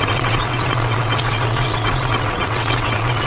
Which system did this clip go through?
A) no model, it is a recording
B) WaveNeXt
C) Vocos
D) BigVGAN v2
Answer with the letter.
B